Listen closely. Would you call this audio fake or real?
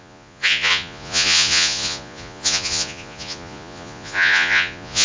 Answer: fake